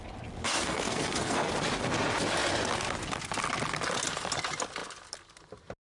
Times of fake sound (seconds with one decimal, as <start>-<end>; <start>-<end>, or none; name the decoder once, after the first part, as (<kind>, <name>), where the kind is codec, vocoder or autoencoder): 0.4-1.5 (codec, SNAC)